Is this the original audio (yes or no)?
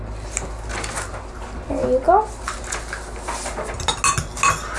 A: yes